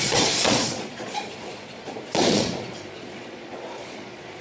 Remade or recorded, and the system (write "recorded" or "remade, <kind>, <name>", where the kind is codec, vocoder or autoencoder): remade, vocoder, Vocos